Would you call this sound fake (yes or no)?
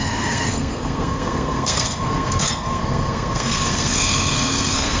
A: yes